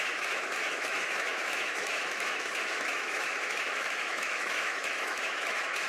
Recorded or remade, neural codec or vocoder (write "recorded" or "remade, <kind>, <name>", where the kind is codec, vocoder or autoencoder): remade, autoencoder, DAC-VAE